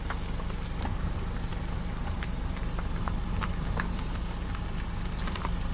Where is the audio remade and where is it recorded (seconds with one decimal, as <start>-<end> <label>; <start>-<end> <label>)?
0.0-5.7 recorded